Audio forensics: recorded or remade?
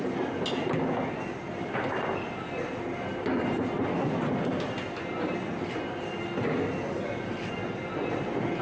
recorded